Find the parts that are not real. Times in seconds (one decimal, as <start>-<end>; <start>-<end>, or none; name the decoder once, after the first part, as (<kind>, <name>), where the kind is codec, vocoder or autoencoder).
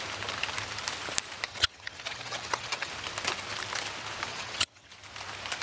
1.5-2.9 (vocoder, HiFi-GAN); 4.3-4.9